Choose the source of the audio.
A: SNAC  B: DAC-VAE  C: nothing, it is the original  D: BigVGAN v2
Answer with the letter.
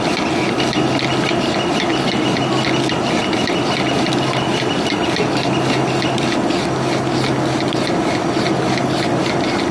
C